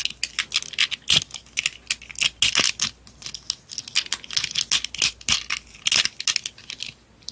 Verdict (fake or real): real